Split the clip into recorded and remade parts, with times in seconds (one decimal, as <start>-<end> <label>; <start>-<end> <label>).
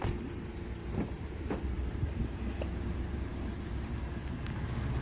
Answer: 0.0-5.0 remade